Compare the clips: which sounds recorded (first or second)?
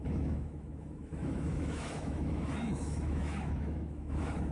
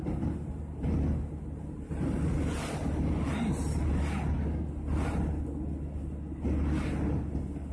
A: second